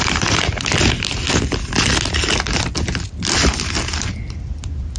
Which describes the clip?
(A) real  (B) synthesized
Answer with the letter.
A